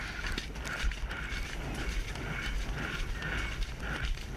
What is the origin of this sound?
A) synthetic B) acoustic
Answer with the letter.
B